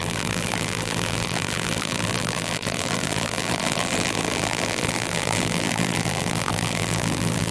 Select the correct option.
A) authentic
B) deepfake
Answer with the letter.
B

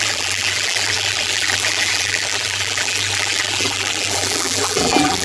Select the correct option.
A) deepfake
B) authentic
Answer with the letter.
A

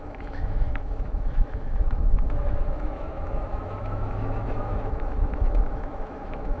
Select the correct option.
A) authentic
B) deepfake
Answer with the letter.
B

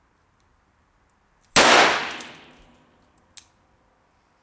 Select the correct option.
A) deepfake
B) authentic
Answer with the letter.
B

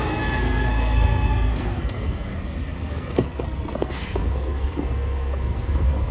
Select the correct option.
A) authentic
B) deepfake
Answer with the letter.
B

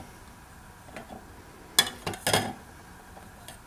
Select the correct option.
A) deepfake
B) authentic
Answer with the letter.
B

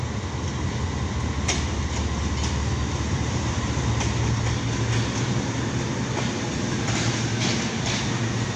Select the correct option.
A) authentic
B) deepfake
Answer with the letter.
A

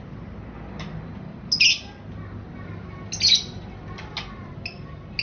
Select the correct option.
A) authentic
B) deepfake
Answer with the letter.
A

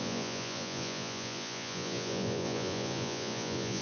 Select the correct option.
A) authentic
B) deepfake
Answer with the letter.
B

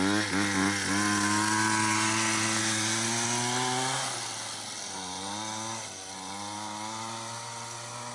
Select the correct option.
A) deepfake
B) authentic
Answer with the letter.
B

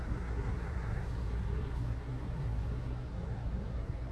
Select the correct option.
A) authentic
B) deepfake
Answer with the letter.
B